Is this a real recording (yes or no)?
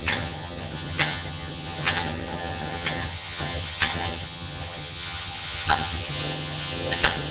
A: no